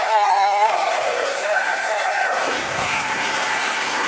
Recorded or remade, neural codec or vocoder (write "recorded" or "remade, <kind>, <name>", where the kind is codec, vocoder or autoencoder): remade, codec, SNAC